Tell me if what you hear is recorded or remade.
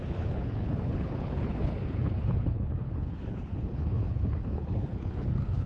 remade